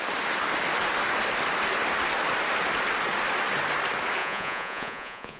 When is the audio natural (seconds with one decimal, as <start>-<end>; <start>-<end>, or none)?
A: 0.0-4.2